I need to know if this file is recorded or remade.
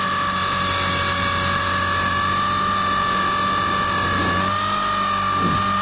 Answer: recorded